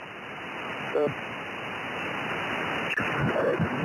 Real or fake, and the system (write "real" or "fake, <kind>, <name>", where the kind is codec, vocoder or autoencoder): real